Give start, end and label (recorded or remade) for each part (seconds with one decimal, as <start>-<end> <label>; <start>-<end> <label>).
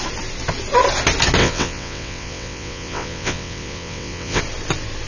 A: 0.0-1.4 recorded; 1.4-4.4 remade; 4.4-5.1 recorded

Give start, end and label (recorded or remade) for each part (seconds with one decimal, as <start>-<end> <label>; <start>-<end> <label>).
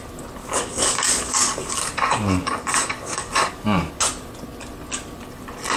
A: 0.0-0.4 recorded; 0.4-3.9 remade; 3.9-5.8 recorded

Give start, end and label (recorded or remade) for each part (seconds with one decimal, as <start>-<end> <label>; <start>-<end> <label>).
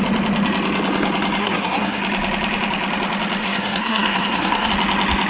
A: 0.0-1.4 recorded; 1.4-2.0 remade; 2.0-3.4 recorded; 3.4-4.7 remade; 4.7-5.3 recorded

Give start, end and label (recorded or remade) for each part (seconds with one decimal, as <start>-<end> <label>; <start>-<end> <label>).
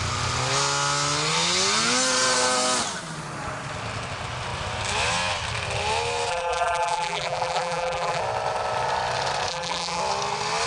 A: 0.0-6.3 recorded; 6.3-8.2 remade; 8.2-9.5 recorded; 9.5-10.0 remade; 10.0-10.7 recorded